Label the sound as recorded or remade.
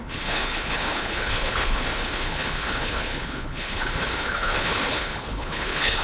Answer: remade